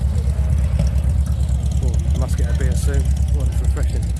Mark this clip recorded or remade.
recorded